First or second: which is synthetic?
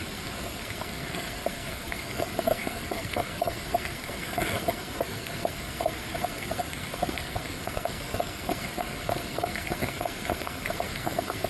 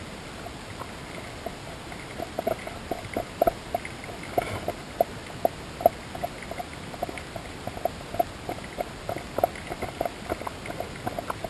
first